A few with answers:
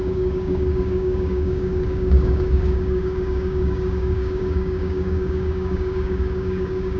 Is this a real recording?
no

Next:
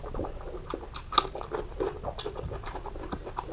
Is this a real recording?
yes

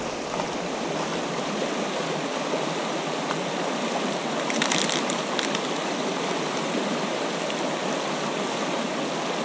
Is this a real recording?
yes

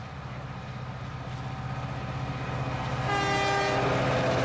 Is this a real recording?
yes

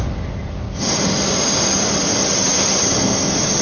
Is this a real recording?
yes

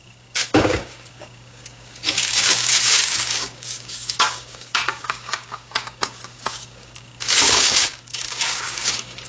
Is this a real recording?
no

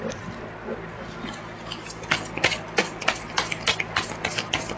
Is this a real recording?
yes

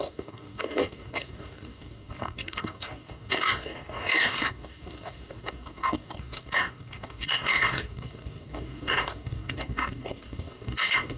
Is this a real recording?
no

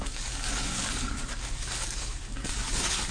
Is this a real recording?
no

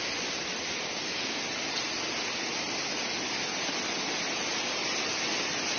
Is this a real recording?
yes